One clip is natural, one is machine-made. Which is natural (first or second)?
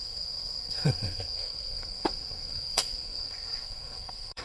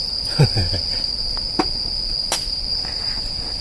second